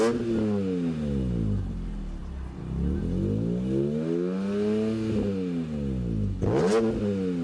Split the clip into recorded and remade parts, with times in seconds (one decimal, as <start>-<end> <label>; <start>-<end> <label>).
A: 0.0-7.4 recorded